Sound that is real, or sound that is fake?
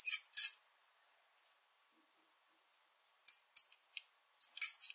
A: real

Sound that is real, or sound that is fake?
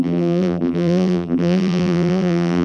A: fake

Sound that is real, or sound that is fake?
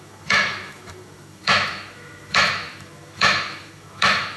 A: fake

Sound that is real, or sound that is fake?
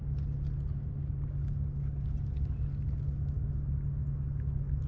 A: real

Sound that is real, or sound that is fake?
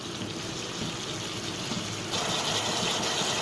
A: real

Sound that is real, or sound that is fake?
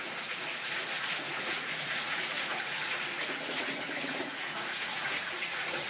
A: fake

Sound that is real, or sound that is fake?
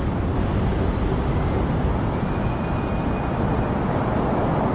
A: real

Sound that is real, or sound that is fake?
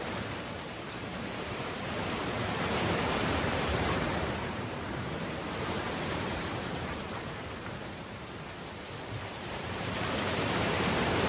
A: fake